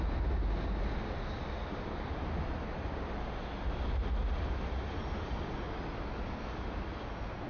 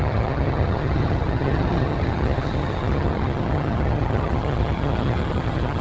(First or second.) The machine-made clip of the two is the second